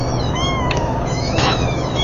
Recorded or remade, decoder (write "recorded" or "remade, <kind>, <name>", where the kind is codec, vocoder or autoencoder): remade, autoencoder, DAC-VAE